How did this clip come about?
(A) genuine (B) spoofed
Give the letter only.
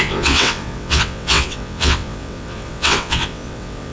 B